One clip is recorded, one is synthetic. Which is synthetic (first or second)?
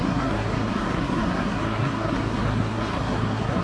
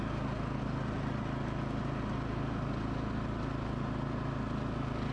first